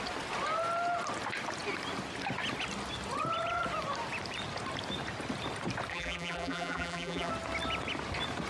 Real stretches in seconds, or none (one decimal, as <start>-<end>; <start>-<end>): 0.0-5.9; 7.3-8.5